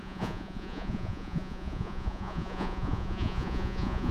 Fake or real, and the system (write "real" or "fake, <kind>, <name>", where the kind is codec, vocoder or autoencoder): fake, vocoder, Vocos